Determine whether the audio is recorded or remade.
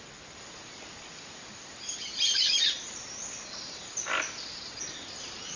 recorded